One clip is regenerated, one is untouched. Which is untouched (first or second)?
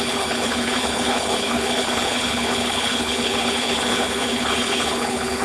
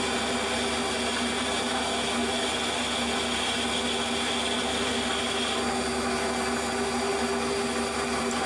second